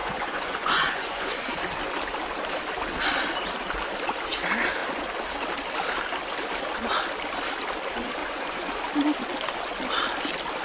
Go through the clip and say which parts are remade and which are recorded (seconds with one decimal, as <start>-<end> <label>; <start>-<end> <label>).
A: 0.0-1.5 remade; 1.5-8.2 recorded; 8.2-8.7 remade; 8.7-10.6 recorded